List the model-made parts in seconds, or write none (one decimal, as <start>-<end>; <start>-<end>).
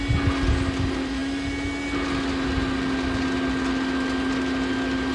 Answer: none